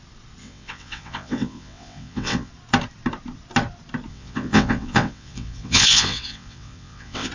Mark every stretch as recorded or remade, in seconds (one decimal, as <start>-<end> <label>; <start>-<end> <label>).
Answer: 0.0-0.4 recorded; 0.4-2.5 remade; 2.5-4.1 recorded; 4.1-7.3 remade